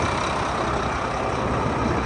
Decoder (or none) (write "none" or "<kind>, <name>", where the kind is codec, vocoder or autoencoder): none